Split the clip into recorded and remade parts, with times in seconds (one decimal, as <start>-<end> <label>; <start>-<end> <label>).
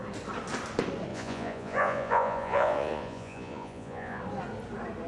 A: 0.0-1.1 recorded; 1.1-4.2 remade; 4.2-5.1 recorded